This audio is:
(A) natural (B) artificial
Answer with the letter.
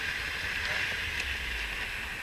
A